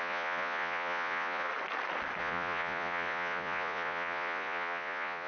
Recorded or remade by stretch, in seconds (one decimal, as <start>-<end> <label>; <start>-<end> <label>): 0.0-1.5 remade; 1.5-2.2 recorded; 2.2-5.3 remade